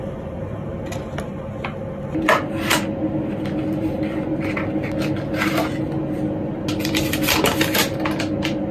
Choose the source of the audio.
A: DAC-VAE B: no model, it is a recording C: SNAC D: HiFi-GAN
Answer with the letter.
B